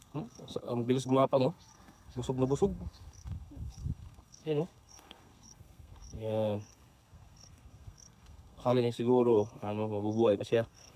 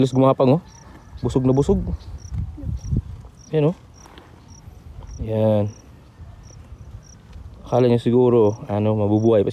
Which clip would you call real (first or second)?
second